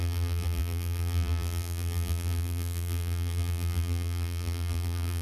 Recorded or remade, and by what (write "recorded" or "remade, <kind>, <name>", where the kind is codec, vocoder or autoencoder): remade, vocoder, BigVGAN v2